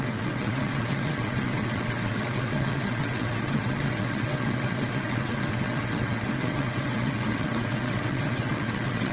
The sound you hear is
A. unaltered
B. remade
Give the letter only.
B